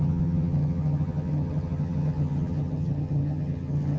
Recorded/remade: remade